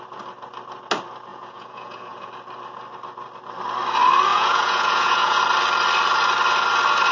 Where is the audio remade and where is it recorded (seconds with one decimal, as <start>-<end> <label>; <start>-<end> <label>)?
0.0-1.3 recorded; 1.3-2.3 remade; 2.3-4.3 recorded; 4.3-5.4 remade; 5.4-7.1 recorded